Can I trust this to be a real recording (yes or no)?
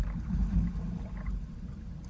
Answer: yes